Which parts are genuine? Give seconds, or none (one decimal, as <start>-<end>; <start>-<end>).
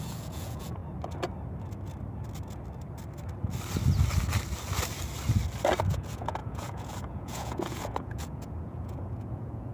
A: 0.8-5.8